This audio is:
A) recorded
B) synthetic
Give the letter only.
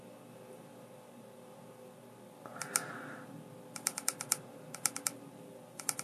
A